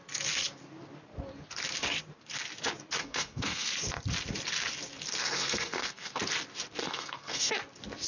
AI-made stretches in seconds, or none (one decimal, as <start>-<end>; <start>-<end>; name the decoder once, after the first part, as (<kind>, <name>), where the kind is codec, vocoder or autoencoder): 3.0-3.7 (codec, SNAC); 5.2-6.2; 6.8-7.5